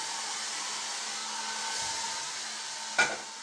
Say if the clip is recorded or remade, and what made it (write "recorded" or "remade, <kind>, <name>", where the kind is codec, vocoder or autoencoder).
recorded